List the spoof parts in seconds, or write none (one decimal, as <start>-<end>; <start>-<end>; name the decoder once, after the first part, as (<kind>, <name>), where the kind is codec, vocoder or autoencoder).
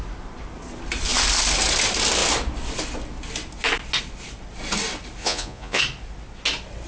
5.2-5.8 (vocoder, Vocos)